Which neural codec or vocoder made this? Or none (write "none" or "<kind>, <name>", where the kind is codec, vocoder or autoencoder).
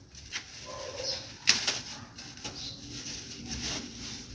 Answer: none